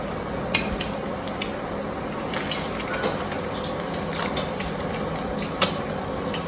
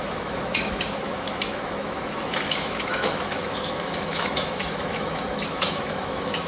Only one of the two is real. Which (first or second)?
first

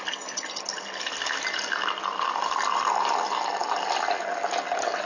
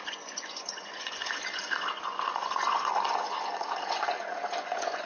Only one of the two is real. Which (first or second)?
first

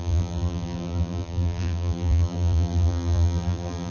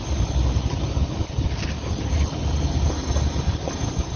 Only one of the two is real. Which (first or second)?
second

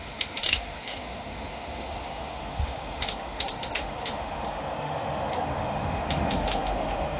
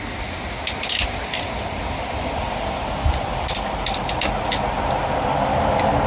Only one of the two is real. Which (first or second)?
second